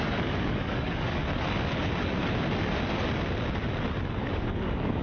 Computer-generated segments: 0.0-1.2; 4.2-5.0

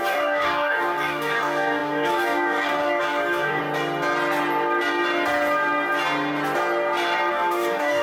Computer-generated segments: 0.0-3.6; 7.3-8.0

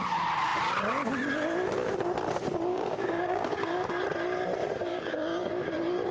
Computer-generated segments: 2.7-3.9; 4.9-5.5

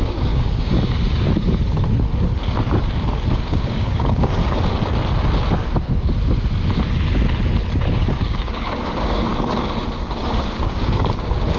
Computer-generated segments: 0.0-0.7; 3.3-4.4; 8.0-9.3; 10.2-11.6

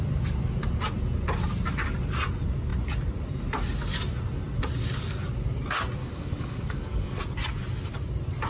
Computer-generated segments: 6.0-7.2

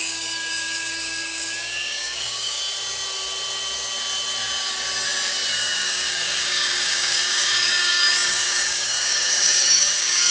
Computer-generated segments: 0.0-2.6; 5.5-10.3